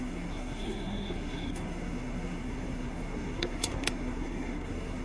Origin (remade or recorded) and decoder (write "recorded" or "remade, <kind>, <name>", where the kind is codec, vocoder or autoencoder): remade, codec, SNAC